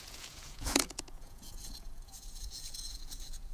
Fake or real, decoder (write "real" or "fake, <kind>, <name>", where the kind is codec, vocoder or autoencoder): fake, vocoder, Vocos